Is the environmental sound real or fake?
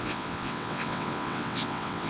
fake